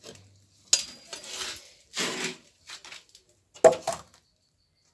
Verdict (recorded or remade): recorded